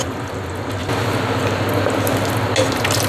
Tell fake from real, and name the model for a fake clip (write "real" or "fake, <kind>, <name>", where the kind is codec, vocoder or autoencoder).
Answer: real